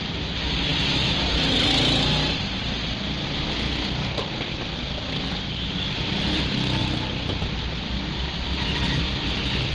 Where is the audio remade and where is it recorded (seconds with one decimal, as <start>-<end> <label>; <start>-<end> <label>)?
0.0-9.7 recorded